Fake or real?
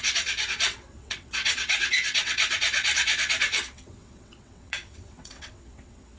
fake